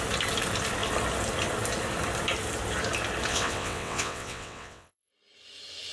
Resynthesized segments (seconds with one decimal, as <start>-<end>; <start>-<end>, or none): 3.3-5.1